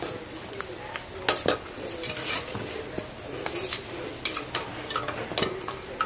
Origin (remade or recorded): recorded